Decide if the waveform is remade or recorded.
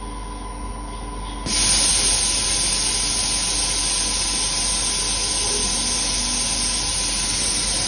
recorded